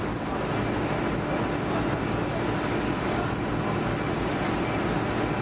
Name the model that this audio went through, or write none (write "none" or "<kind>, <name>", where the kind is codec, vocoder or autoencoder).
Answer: none